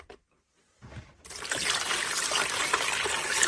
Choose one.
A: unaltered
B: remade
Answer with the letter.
A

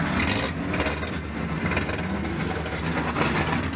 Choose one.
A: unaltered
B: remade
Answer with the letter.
A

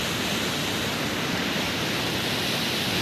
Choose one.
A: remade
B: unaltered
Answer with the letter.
B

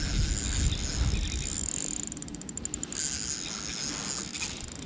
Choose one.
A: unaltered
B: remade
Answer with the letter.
A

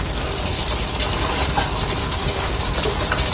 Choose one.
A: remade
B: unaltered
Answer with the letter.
B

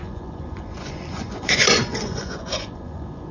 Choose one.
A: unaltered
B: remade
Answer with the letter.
B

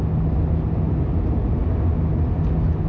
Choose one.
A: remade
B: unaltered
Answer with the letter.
B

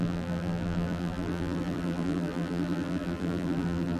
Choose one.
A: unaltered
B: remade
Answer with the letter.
B